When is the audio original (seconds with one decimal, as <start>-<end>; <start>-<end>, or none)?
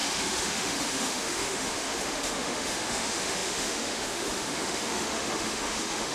none